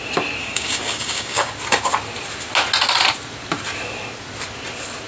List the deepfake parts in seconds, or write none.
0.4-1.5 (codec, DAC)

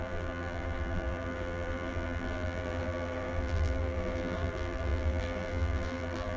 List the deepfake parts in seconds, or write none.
0.0-6.4 (vocoder, BigVGAN v2)

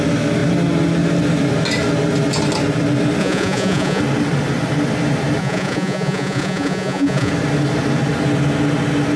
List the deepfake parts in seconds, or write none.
3.2-4.0 (vocoder, Vocos); 5.4-7.3

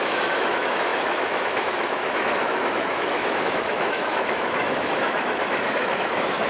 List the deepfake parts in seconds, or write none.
0.0-6.5 (autoencoder, DAC-VAE)

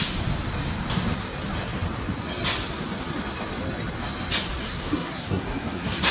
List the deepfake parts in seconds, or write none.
4.6-6.1 (codec, SNAC)

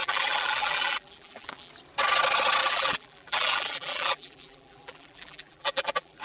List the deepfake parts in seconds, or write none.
0.0-1.7 (vocoder, BigVGAN v2); 2.6-6.2